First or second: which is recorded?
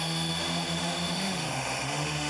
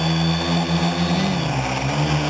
second